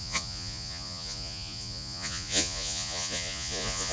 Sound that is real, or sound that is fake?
fake